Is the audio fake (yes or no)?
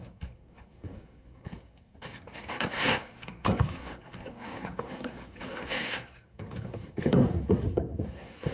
yes